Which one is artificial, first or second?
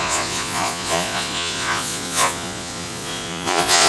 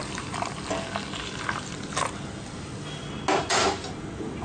first